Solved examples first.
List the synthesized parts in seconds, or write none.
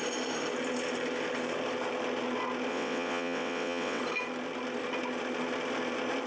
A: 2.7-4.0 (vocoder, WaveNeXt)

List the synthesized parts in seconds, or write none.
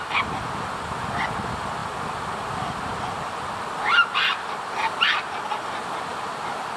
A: none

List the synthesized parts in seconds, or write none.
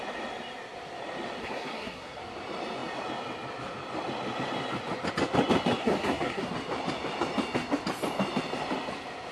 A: 1.4-2.2 (codec, SNAC); 5.8-6.5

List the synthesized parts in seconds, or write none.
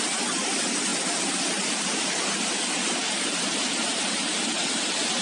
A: none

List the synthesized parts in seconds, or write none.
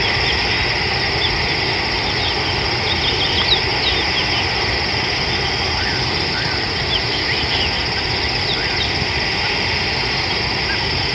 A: none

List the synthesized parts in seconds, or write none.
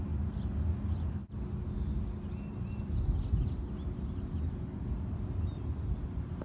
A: none